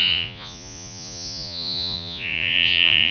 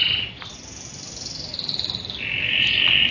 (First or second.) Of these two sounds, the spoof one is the first